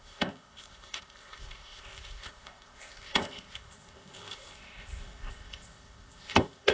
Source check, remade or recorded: remade